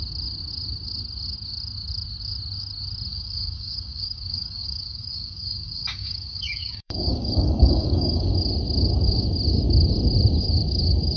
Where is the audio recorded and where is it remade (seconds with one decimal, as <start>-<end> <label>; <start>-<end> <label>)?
0.0-3.1 recorded; 3.1-8.3 remade; 8.3-11.2 recorded